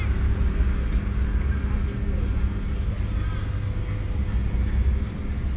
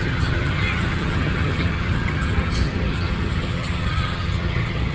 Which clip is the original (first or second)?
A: first